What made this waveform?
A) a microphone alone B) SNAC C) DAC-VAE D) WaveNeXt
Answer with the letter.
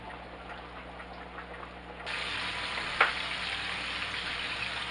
A